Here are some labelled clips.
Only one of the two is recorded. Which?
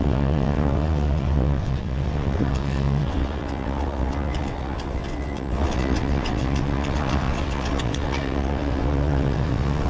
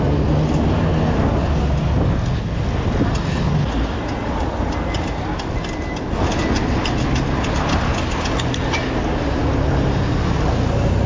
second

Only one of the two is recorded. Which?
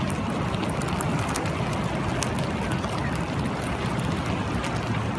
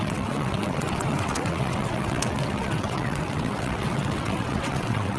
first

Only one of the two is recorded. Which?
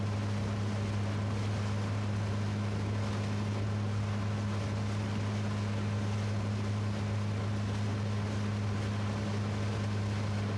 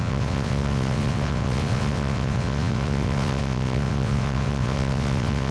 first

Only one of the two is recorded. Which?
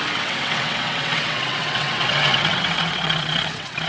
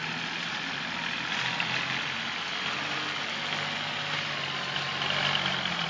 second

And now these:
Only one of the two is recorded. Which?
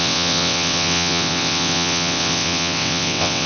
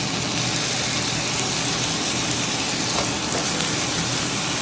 second